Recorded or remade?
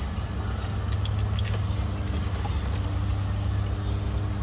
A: recorded